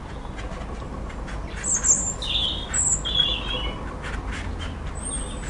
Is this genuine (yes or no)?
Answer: yes